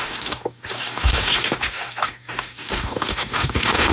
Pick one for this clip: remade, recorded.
remade